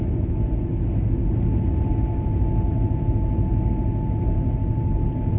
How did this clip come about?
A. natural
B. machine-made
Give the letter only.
A